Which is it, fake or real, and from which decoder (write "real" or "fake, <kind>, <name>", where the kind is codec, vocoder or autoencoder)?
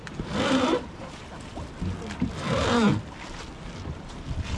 fake, vocoder, BigVGAN v2